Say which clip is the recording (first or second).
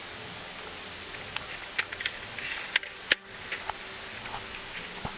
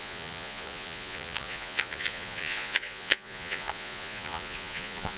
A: first